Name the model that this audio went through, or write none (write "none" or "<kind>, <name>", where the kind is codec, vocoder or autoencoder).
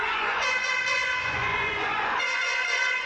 vocoder, Vocos